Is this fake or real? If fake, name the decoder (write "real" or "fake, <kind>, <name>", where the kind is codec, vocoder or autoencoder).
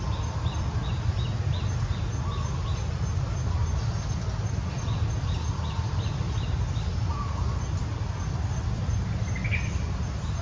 real